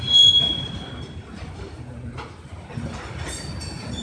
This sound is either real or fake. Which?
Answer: real